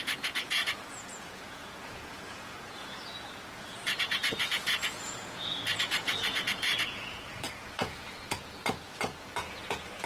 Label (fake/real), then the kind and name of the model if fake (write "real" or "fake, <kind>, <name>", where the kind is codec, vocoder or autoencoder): fake, vocoder, Vocos